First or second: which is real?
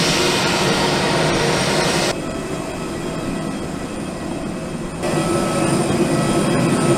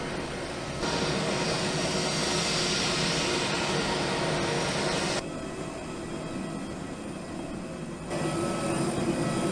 second